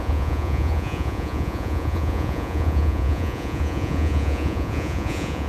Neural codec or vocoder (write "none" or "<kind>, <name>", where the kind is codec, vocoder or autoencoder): vocoder, Vocos